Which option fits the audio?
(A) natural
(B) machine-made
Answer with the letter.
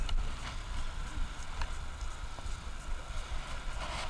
A